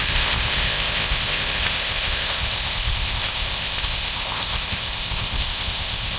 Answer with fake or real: fake